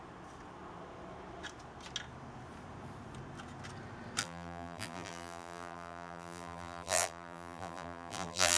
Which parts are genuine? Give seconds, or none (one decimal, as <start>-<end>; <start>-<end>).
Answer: 0.0-4.2